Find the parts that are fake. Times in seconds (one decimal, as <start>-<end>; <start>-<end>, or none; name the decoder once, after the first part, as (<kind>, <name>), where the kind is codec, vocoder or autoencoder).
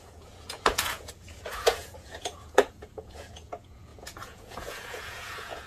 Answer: 0.0-5.7 (vocoder, Vocos)